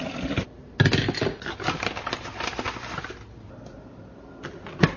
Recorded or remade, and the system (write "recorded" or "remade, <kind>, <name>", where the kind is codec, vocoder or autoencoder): recorded